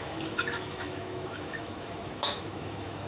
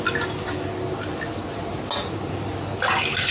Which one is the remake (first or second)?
first